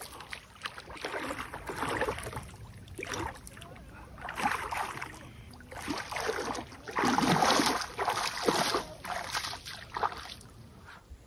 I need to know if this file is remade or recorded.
recorded